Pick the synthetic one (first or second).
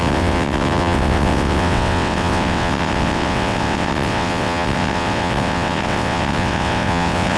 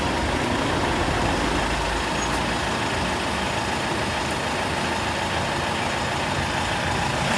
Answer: first